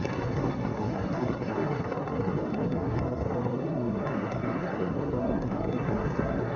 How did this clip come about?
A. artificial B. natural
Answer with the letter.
A